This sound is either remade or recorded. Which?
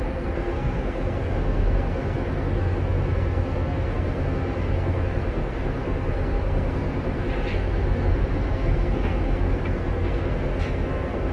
remade